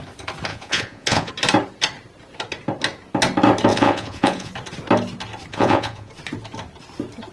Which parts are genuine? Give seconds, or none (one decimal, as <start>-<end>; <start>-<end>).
0.0-0.5; 1.3-3.7; 4.5-5.5; 6.1-7.3